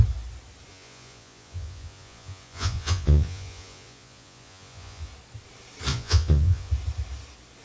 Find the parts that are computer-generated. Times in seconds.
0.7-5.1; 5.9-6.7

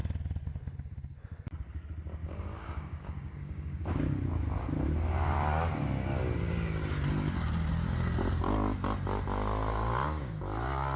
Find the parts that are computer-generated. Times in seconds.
2.2-3.9; 9.7-10.4

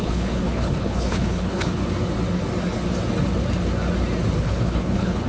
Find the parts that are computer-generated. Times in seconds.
0.0-1.8; 4.4-5.3

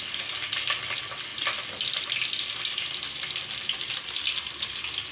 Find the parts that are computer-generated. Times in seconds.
none

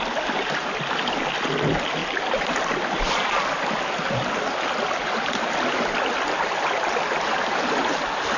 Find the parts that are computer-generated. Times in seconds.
none